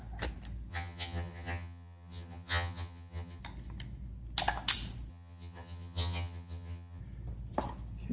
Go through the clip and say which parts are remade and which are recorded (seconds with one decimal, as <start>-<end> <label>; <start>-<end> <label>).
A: 0.0-0.7 recorded; 0.7-3.4 remade; 3.4-5.1 recorded; 5.1-7.0 remade; 7.0-8.1 recorded